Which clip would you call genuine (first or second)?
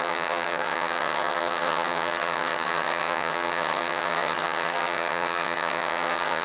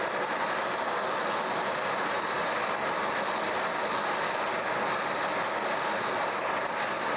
second